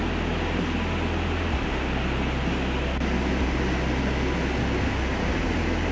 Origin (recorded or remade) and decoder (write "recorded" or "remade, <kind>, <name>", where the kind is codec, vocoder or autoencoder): recorded